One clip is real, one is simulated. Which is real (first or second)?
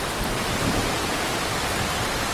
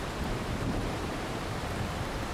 first